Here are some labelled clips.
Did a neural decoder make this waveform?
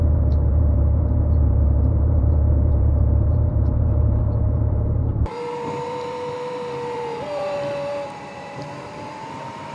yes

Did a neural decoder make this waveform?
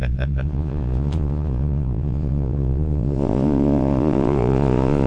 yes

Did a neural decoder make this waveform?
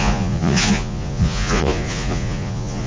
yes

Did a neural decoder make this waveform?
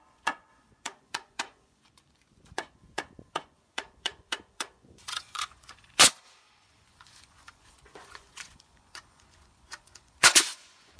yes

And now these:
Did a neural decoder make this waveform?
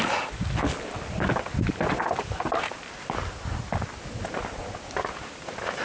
no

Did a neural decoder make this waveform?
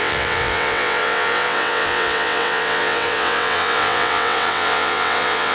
yes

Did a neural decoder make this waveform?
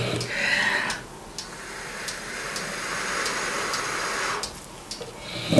no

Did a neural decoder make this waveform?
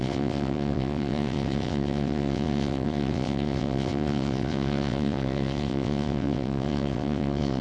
yes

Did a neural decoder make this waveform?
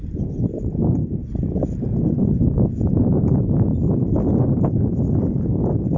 no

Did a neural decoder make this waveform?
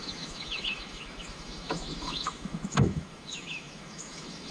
yes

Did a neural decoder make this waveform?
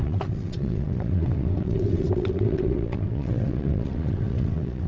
yes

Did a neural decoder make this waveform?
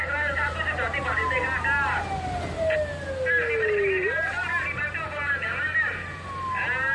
no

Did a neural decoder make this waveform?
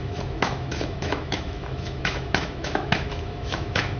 yes